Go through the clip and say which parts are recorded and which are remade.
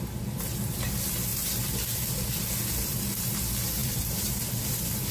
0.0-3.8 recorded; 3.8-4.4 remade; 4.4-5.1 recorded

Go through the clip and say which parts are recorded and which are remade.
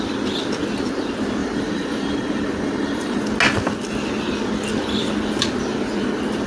0.0-1.4 recorded; 1.4-3.2 remade; 3.2-6.5 recorded